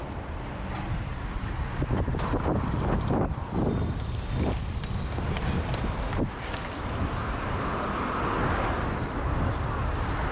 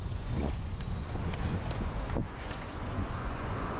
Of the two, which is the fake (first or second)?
second